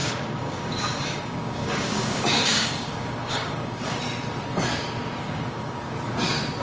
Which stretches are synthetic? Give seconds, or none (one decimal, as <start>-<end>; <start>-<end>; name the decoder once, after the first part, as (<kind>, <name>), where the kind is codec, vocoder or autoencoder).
0.0-4.0 (codec, DAC); 5.2-5.8